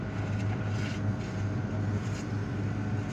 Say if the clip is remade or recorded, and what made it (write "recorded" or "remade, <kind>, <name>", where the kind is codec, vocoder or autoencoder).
recorded